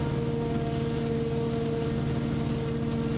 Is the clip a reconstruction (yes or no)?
no